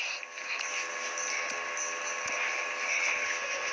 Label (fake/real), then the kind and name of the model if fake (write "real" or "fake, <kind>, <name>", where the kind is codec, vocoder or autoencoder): real